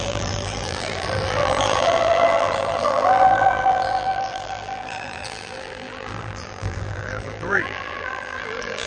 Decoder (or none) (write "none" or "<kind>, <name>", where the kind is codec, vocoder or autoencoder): vocoder, BigVGAN v2